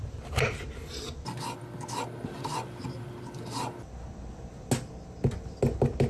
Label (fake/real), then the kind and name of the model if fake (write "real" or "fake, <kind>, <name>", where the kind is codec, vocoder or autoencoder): real